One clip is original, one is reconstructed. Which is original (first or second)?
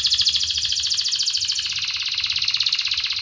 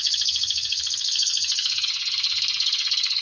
first